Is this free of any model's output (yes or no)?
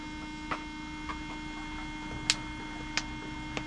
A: yes